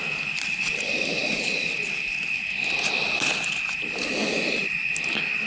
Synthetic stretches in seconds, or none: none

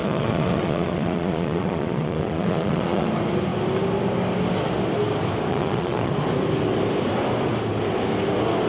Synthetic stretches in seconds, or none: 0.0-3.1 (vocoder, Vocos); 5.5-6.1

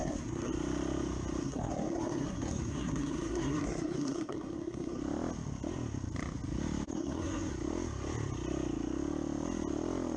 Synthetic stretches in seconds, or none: 0.0-0.5 (codec, SNAC); 1.4-5.0; 6.9-7.5

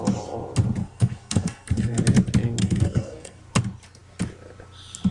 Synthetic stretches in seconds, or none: 0.8-2.0 (codec, SNAC); 2.6-3.4

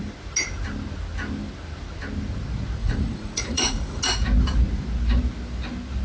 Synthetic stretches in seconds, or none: 2.8-4.0 (vocoder, Vocos)

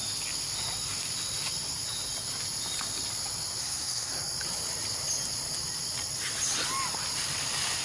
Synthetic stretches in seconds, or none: 3.6-4.1 (codec, SNAC)

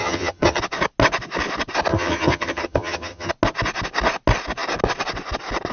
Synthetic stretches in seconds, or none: 0.0-0.6 (vocoder, HiFi-GAN); 1.9-3.3